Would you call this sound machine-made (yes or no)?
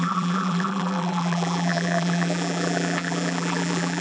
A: yes